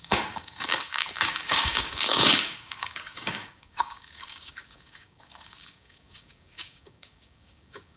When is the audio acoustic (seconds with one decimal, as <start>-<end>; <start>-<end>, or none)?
none